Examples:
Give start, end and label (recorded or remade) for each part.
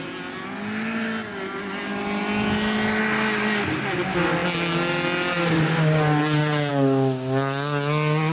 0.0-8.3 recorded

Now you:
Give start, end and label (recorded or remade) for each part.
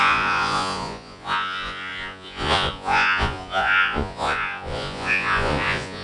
0.0-6.0 remade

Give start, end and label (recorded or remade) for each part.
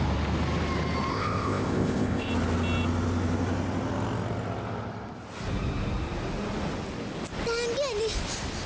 0.0-1.1 recorded; 1.1-2.3 remade; 2.3-8.7 recorded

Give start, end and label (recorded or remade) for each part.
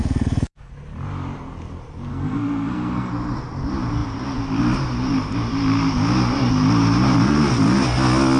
0.0-0.7 remade; 0.7-2.1 recorded; 2.1-3.1 remade; 3.1-8.4 recorded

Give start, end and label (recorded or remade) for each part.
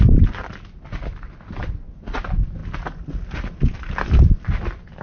0.0-5.0 recorded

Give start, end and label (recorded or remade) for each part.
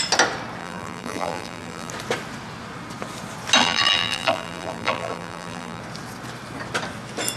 0.0-0.6 recorded; 0.6-1.9 remade; 1.9-3.6 recorded; 3.6-5.8 remade; 5.8-7.4 recorded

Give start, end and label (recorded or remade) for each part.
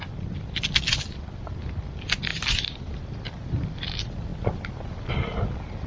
0.0-2.3 recorded; 2.3-3.0 remade; 3.0-5.9 recorded